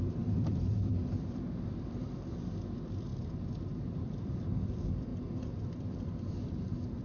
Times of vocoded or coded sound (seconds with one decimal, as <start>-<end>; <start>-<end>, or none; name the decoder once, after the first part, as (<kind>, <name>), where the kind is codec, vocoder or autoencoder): 0.0-3.1 (vocoder, BigVGAN v2); 4.0-5.1; 5.7-7.0